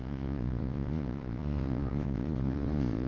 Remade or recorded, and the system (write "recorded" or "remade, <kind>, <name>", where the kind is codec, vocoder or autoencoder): remade, vocoder, Vocos